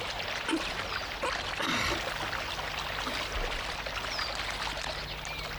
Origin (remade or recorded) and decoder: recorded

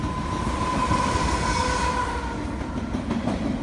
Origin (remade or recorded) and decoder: recorded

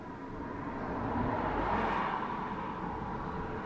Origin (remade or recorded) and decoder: recorded